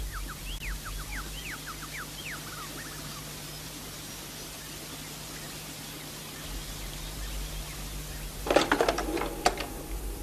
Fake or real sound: real